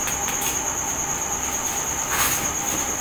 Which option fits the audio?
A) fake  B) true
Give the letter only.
B